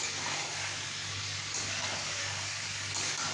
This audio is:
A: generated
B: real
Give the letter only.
A